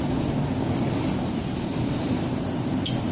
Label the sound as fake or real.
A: real